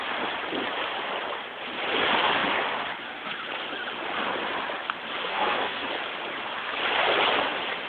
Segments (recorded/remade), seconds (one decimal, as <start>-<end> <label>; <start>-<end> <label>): 0.0-5.2 recorded; 5.2-5.9 remade; 5.9-7.9 recorded